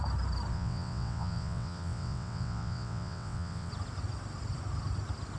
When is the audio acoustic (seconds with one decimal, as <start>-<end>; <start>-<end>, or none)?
0.0-0.5; 3.7-5.4

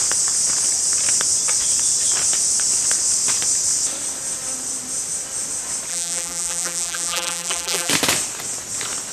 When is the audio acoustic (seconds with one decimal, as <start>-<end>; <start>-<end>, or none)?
0.0-5.9; 7.9-9.1

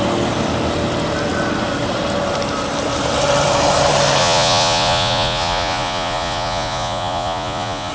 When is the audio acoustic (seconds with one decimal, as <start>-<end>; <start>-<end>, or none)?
0.0-4.2

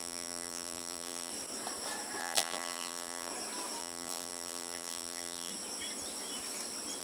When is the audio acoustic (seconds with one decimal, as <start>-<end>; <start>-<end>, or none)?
1.3-2.2; 3.3-3.8; 5.5-7.0